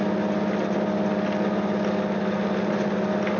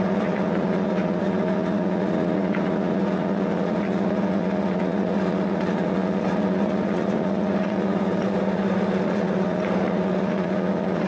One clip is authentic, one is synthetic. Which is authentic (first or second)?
first